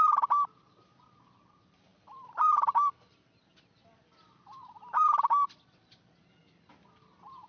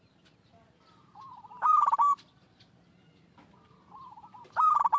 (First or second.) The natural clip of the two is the first